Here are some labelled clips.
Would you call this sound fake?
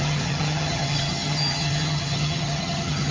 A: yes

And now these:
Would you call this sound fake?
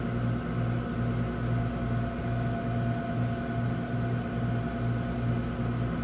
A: no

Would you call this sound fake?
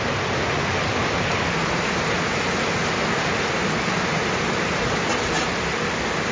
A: no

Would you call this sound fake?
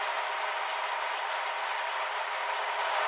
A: no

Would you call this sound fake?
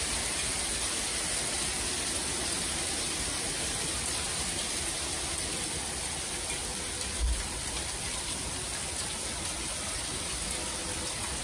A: no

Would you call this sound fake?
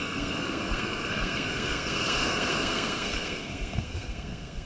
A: yes